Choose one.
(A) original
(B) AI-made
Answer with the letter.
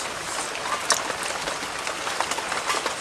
A